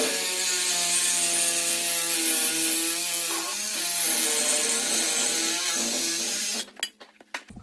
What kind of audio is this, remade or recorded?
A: recorded